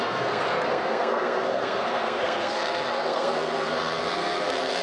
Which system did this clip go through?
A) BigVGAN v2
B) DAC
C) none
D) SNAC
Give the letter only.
D